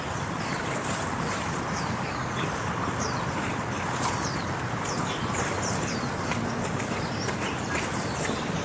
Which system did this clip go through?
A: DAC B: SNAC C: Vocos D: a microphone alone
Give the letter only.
D